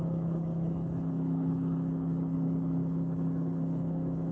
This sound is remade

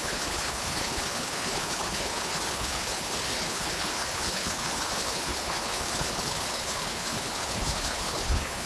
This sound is remade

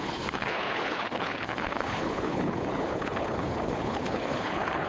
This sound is remade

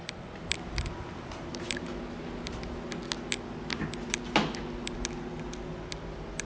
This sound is recorded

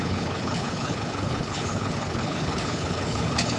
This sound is remade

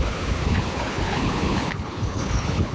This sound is remade